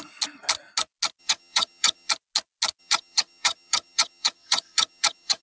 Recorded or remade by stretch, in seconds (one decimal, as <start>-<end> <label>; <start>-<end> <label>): 0.0-1.2 recorded; 1.2-2.1 remade; 2.1-2.8 recorded; 2.8-5.4 remade